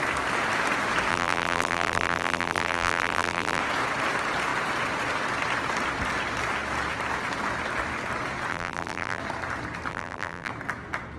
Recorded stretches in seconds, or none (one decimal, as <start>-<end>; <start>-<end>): 0.0-1.1; 3.6-8.5; 9.2-9.9; 10.5-11.2